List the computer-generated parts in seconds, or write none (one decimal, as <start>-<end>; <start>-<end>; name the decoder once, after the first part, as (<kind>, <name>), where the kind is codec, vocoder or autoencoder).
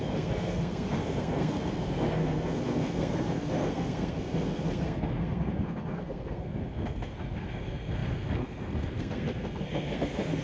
0.0-10.4 (codec, SNAC)